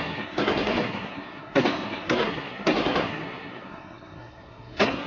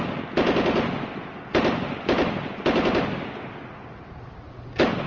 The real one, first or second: second